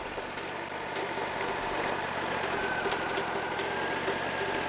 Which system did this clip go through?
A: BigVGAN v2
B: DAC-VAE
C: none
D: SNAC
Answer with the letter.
C